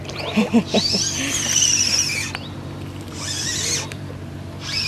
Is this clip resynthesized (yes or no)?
yes